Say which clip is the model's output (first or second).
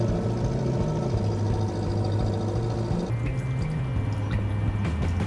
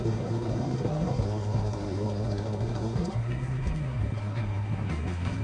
second